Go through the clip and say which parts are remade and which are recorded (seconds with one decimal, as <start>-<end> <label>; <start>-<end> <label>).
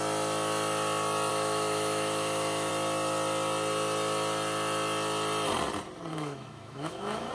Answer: 0.0-1.3 recorded; 1.3-2.7 remade; 2.7-6.1 recorded; 6.1-7.3 remade